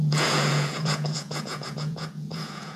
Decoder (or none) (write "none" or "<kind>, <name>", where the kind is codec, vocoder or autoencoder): vocoder, Vocos